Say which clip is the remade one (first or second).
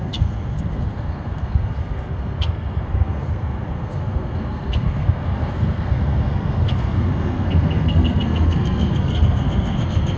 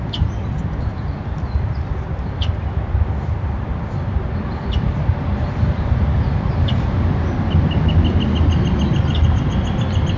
first